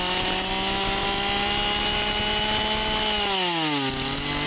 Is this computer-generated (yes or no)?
no